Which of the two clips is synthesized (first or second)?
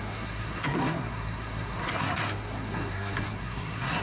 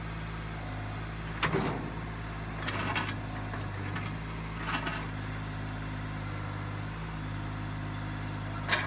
first